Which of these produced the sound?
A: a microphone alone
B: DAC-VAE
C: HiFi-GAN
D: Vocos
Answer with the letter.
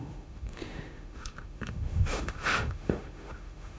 B